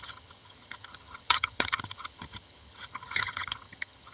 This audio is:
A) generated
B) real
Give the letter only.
A